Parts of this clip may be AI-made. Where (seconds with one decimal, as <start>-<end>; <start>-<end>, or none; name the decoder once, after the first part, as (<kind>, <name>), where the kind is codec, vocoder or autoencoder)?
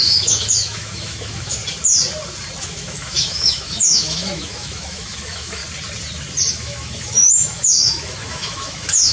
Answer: 0.0-1.6 (autoencoder, DAC-VAE); 2.6-5.6; 6.5-9.1